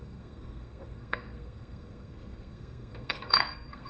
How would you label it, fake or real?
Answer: fake